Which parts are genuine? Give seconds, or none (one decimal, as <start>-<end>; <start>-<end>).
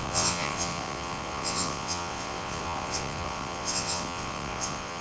none